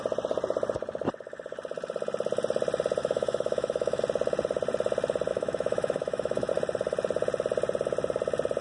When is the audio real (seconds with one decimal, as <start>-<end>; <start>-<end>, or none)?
0.0-3.0; 4.0-5.3; 6.5-8.6